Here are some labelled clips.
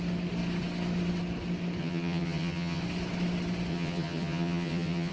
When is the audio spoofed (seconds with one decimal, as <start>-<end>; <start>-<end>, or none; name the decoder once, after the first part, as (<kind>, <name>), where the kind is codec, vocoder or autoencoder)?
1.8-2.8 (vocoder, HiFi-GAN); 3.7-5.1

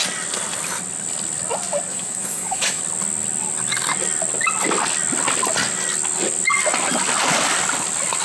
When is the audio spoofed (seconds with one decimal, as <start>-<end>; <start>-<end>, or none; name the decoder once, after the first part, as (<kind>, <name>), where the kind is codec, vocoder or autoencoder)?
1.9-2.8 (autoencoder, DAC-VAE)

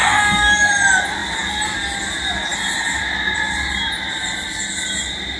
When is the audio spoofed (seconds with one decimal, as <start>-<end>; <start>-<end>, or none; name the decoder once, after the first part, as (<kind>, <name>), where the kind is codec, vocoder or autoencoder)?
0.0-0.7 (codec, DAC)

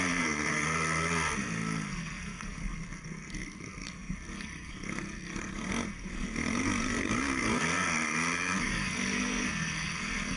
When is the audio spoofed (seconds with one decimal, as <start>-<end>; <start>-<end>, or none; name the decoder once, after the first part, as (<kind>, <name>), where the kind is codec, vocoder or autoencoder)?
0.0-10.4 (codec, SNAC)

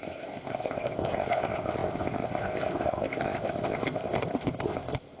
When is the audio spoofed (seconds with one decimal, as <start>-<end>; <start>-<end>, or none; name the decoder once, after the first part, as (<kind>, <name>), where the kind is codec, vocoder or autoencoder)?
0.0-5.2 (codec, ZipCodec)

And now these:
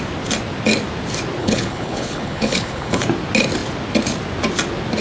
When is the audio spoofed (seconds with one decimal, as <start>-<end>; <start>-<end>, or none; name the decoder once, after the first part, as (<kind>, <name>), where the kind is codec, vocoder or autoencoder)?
1.4-3.0 (codec, HILCodec)

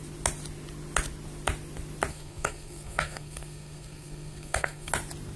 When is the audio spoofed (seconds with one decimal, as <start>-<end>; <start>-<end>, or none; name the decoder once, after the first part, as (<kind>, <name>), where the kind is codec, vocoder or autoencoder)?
2.1-4.9 (codec, SNAC)